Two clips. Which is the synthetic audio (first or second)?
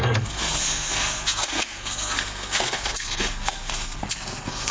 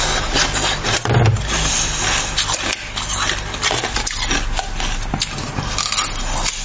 first